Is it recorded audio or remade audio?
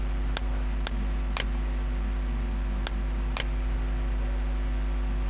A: recorded